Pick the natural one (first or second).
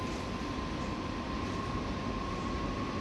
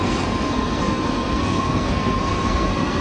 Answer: first